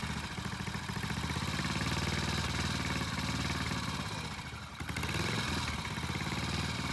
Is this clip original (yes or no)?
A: yes